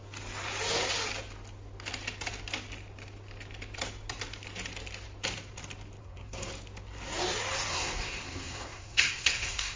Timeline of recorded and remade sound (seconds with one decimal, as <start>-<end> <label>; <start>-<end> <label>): 0.0-6.0 recorded; 6.0-6.5 remade; 6.5-7.7 recorded; 7.7-9.8 remade